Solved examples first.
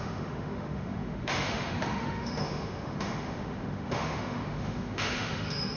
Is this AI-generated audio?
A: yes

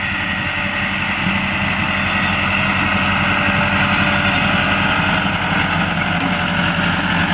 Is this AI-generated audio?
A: no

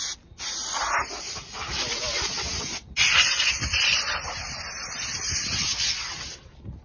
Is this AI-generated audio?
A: no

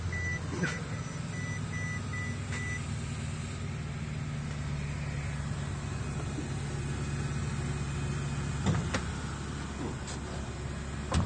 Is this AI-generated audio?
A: no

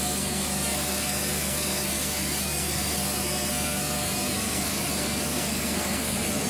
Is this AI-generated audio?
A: yes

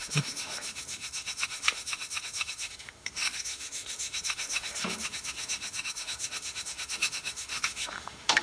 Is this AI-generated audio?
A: yes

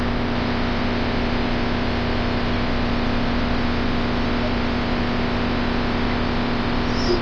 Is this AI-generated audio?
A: no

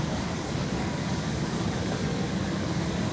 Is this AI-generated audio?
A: yes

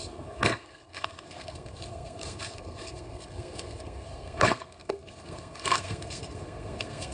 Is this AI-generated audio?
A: yes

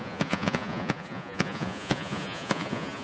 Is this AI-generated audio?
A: yes